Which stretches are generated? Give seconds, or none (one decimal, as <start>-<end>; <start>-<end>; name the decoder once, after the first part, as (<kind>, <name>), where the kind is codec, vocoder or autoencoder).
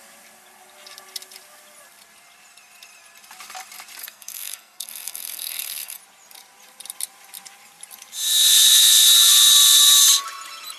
4.0-6.0 (codec, SNAC)